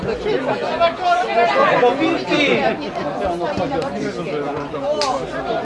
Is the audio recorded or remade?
recorded